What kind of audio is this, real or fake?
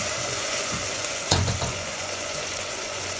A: fake